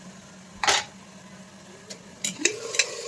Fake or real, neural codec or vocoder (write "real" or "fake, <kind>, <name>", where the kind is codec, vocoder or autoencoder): real